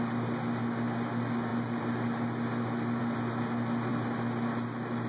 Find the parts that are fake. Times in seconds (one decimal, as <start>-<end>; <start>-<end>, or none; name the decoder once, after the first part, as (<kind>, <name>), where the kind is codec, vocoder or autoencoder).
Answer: none